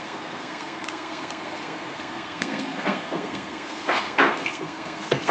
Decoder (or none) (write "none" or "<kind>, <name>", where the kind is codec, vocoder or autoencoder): codec, SNAC